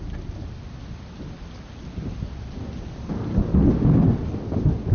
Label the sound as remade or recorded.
recorded